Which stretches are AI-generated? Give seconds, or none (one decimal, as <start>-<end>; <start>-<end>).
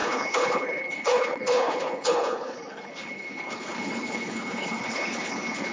0.0-5.7